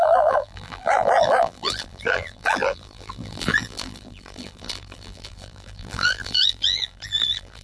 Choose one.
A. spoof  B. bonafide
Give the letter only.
A